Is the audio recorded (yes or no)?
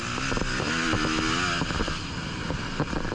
yes